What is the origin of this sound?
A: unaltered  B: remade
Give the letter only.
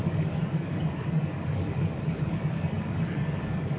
B